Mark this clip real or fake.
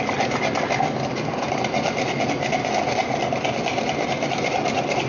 real